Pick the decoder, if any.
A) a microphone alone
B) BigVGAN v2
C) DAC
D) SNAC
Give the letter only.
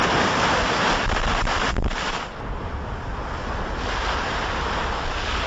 A